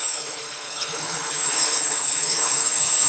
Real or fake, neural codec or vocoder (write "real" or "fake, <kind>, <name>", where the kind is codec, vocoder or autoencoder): fake, codec, HILCodec